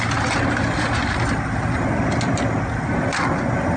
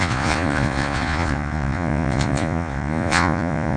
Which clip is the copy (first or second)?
second